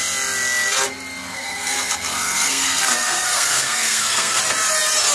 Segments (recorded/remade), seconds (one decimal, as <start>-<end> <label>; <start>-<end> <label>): 0.0-1.3 recorded; 1.3-4.4 remade; 4.4-5.1 recorded